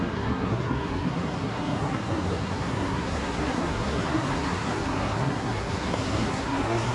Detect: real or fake fake